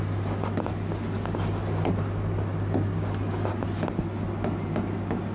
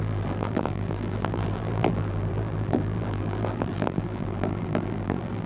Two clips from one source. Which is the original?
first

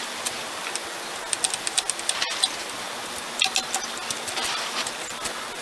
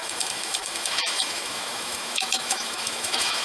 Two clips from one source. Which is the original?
first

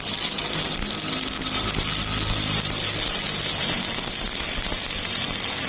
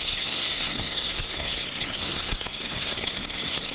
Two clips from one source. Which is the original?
first